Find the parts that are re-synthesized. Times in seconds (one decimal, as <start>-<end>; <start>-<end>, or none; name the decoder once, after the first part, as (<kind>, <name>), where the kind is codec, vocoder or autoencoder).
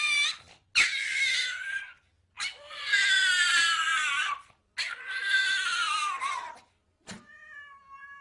none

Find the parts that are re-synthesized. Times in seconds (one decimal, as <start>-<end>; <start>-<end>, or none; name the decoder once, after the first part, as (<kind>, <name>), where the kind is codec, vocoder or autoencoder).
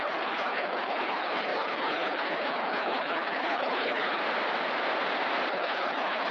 0.0-4.2 (codec, HILCodec); 5.5-6.3